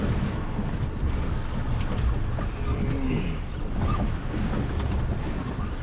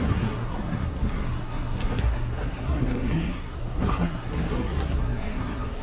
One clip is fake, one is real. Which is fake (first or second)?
second